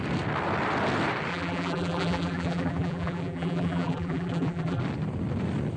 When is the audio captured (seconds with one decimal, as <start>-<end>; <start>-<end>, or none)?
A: 0.0-1.3; 4.8-5.8